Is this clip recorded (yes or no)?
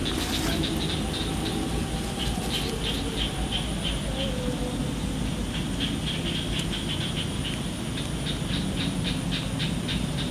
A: yes